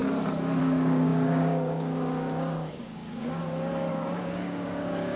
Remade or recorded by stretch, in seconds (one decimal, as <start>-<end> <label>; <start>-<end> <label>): 0.0-0.6 recorded; 0.6-3.4 remade; 3.4-3.9 recorded; 3.9-5.2 remade